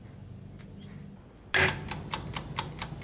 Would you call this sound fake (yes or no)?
no